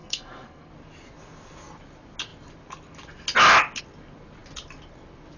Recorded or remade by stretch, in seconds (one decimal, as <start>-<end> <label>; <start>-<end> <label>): 0.0-0.7 remade; 0.7-5.4 recorded